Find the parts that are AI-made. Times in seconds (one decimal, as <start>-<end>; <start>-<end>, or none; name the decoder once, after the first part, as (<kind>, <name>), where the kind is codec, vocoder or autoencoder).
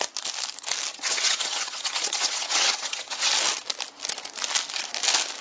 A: 0.9-3.3 (vocoder, HiFi-GAN)